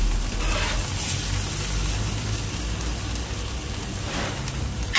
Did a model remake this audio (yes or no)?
no